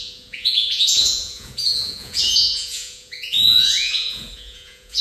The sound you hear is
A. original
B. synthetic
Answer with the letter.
B